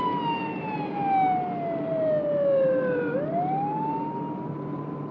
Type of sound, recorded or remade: recorded